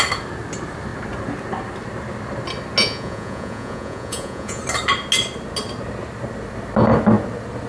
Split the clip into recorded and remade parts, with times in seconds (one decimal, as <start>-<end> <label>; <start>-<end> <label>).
0.0-2.8 recorded; 2.8-4.6 remade; 4.6-7.7 recorded